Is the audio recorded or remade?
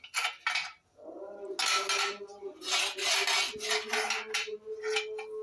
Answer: recorded